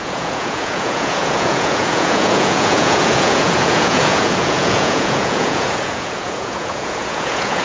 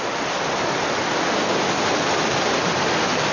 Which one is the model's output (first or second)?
first